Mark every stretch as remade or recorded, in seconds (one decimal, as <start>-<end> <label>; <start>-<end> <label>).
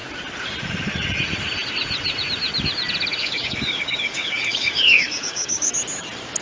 0.0-3.2 recorded; 3.2-5.7 remade; 5.7-6.4 recorded